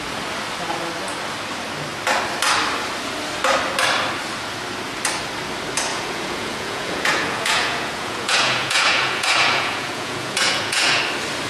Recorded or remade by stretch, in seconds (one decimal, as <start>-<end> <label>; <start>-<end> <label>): 0.0-5.9 recorded; 5.9-11.0 remade; 11.0-11.5 recorded